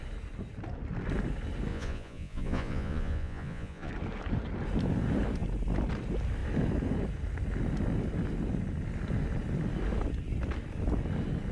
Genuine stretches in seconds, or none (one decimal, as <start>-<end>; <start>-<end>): 0.0-1.7; 3.9-11.5

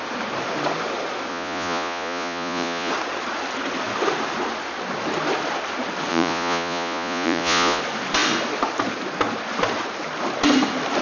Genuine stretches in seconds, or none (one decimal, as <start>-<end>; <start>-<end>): 0.0-1.3; 2.9-6.1; 7.8-11.0